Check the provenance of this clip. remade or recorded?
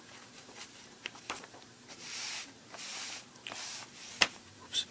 remade